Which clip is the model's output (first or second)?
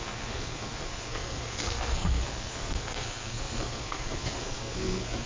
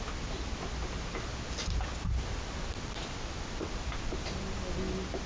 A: first